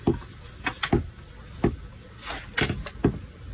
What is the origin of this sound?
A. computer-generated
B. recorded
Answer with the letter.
B